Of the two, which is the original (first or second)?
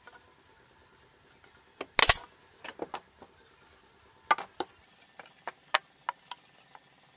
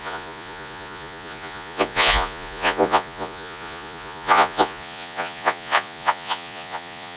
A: first